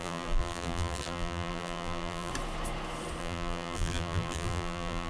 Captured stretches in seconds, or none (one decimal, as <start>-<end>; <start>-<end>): 2.3-3.2